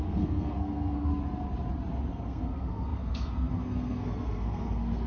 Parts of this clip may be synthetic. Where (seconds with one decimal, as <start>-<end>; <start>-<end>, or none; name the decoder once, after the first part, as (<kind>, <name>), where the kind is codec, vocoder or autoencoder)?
0.0-1.1 (codec, SNAC); 2.1-5.1